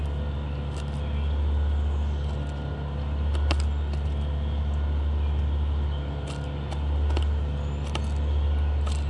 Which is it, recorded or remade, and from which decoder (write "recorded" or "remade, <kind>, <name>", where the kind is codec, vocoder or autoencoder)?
recorded